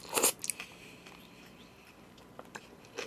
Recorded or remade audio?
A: recorded